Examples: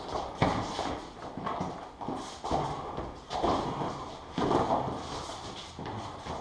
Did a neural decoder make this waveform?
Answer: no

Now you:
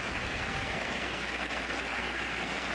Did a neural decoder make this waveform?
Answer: yes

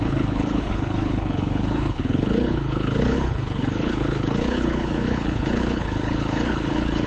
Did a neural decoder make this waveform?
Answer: yes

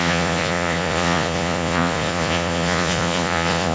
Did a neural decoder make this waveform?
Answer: yes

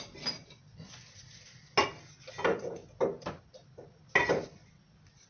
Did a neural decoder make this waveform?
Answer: no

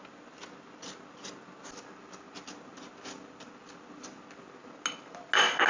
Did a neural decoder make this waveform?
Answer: no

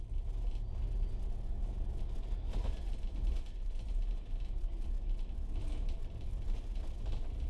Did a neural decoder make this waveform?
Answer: no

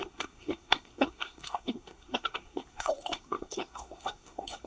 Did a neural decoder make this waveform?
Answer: yes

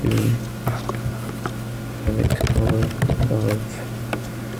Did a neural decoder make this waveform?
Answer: no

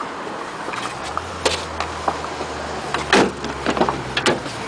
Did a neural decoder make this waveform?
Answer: no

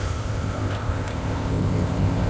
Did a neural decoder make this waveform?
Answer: yes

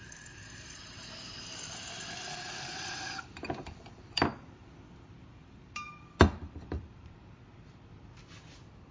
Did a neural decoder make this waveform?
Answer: yes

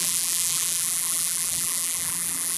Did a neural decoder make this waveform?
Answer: yes